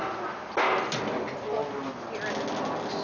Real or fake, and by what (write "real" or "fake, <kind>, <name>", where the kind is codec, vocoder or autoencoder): real